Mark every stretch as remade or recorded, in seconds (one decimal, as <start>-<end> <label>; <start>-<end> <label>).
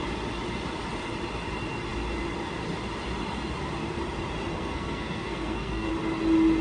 0.0-4.5 recorded; 4.5-5.9 remade; 5.9-6.6 recorded